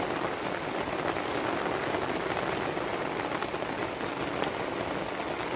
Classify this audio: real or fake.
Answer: real